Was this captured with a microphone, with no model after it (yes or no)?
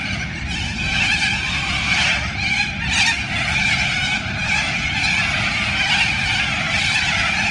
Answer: yes